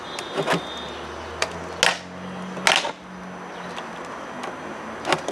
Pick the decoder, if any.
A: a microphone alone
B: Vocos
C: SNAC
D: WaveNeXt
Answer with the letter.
A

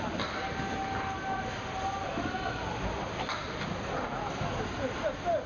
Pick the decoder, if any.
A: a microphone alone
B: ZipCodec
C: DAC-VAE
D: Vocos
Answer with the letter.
A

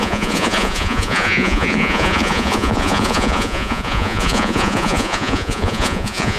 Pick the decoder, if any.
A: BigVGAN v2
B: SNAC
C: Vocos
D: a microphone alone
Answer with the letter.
C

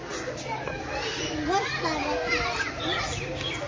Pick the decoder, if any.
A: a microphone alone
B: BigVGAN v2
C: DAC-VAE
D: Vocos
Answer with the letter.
A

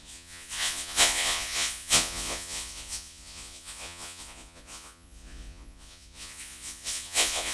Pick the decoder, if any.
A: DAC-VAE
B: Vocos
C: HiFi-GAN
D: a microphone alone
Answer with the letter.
B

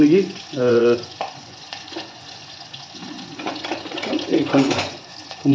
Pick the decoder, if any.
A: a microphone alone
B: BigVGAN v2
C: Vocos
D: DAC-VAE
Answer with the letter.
C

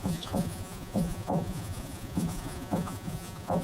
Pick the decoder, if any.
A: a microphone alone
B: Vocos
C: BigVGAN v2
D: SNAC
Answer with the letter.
B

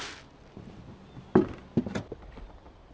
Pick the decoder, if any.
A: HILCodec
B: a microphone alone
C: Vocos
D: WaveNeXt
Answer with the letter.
B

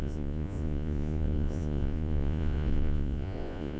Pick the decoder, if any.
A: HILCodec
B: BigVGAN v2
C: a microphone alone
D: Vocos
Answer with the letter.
D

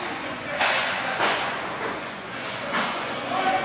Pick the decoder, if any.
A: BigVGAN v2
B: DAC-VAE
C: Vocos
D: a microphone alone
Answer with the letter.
C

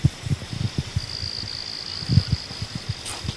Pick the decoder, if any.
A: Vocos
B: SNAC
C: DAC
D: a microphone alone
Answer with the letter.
D